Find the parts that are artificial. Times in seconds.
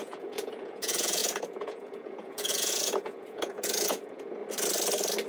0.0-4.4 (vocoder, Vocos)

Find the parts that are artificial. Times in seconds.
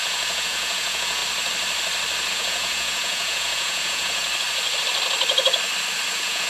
0.0-1.2 (vocoder, Vocos); 2.3-4.2; 6.1-6.5